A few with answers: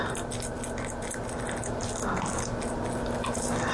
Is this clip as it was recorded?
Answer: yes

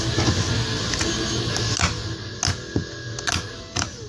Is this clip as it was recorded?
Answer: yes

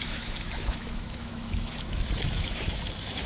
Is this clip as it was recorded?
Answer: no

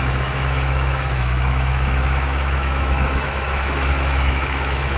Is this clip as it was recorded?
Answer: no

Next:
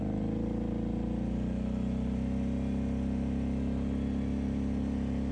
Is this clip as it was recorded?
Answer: yes